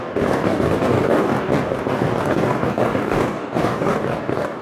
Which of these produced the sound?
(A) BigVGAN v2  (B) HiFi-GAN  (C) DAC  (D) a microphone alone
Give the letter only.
C